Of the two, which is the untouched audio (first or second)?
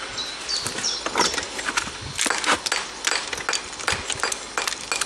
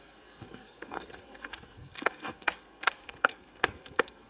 first